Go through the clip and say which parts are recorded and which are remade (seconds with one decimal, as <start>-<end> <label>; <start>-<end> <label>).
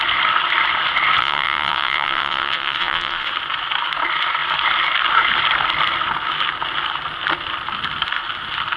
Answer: 0.0-1.2 recorded; 1.2-3.3 remade; 3.3-8.8 recorded